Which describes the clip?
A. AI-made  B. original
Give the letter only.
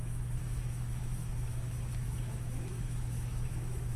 A